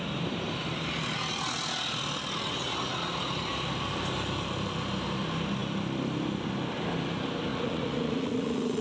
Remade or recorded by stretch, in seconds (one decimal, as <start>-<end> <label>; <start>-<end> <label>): 0.0-7.5 recorded; 7.5-8.8 remade